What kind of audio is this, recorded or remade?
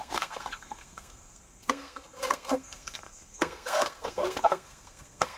remade